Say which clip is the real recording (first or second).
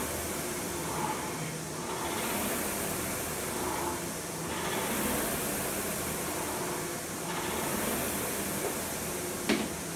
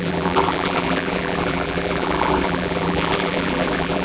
first